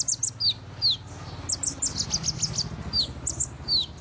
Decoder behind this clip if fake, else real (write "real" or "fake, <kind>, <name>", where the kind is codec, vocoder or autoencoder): real